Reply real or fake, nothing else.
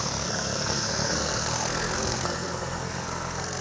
fake